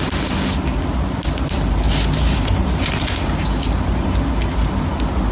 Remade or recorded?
recorded